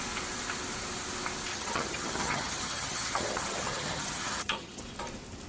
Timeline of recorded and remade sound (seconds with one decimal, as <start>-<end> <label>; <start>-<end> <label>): 0.0-1.5 recorded; 1.5-4.8 remade; 4.8-5.5 recorded